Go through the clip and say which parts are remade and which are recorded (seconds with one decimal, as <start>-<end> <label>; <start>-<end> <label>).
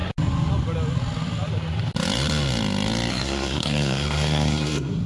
0.0-3.1 recorded; 3.1-5.1 remade